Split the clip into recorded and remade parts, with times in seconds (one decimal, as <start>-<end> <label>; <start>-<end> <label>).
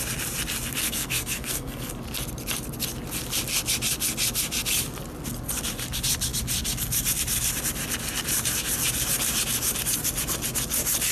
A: 0.0-0.8 recorded; 0.8-1.9 remade; 1.9-11.1 recorded